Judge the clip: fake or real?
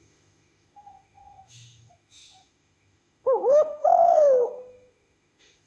fake